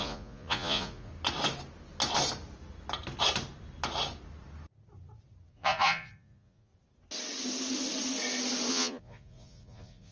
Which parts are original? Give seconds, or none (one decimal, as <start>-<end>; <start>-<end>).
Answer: 1.1-5.5; 6.7-8.7